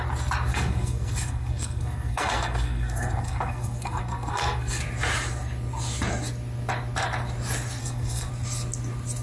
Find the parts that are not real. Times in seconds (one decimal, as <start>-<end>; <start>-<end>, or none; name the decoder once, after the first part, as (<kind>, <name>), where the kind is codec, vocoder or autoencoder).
0.5-4.8 (codec, SNAC); 7.8-8.3